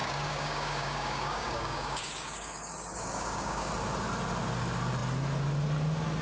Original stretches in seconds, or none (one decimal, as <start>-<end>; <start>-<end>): 3.7-6.2